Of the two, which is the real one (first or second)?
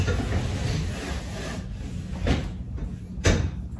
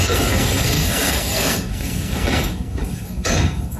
first